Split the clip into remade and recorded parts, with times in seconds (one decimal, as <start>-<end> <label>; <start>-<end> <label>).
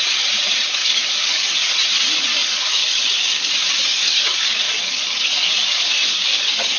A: 0.0-0.8 recorded; 0.8-1.7 remade; 1.7-2.4 recorded; 2.4-3.5 remade; 3.5-3.9 recorded; 3.9-6.8 remade